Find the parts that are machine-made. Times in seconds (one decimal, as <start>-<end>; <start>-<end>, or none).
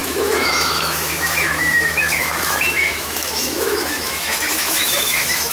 0.0-5.5